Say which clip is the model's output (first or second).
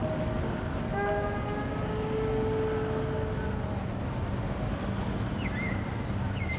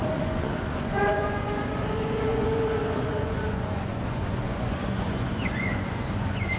second